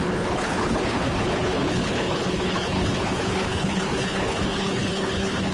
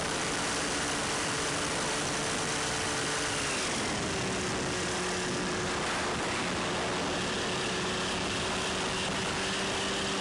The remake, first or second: first